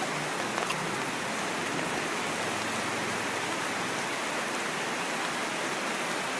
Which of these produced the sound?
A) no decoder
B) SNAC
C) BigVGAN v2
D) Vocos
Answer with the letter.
A